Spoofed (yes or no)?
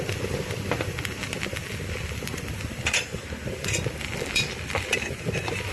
yes